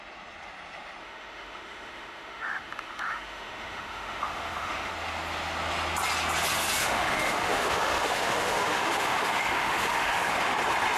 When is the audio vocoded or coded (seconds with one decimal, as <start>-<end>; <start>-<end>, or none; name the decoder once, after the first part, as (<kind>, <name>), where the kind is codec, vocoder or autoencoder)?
1.0-4.9 (autoencoder, DAC-VAE); 6.8-10.6